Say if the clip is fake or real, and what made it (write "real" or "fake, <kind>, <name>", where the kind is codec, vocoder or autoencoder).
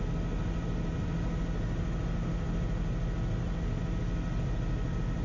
real